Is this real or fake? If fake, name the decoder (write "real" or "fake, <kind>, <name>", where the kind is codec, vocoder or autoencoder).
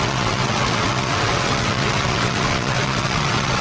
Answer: fake, vocoder, WaveNeXt